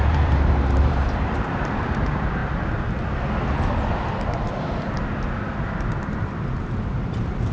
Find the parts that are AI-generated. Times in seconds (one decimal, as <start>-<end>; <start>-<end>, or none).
0.0-2.4; 6.5-7.5